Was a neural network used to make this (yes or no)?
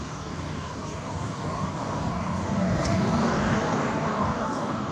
yes